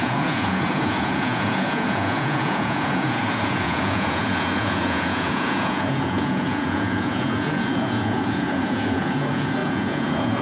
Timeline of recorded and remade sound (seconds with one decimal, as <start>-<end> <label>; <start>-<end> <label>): 0.0-10.4 remade